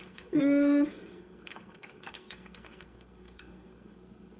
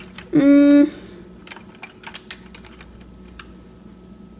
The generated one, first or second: first